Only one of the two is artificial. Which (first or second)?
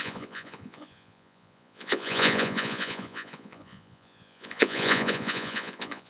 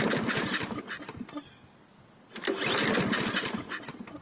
first